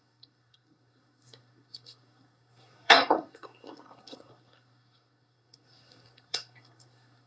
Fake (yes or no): yes